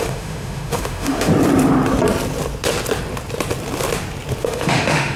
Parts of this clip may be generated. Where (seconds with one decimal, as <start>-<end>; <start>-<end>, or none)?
0.0-1.3; 4.4-5.2